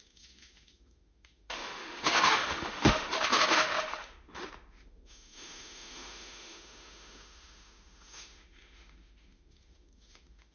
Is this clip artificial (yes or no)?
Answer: yes